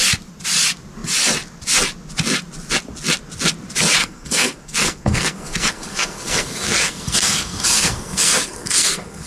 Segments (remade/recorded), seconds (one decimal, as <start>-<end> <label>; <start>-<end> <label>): 0.0-4.0 recorded; 4.0-9.3 remade